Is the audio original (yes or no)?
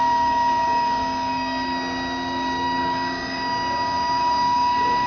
no